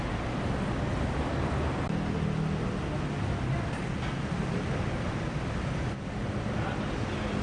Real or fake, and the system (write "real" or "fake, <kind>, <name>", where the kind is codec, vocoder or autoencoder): real